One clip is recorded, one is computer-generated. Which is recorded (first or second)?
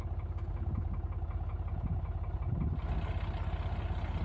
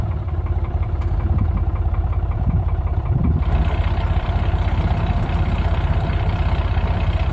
first